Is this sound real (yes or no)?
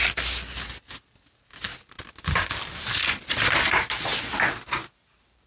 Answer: yes